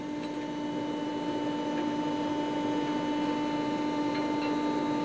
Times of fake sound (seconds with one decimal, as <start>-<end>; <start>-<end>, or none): none